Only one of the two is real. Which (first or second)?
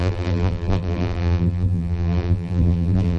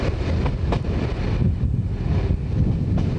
second